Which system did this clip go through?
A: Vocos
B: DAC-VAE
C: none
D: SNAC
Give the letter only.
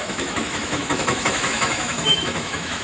B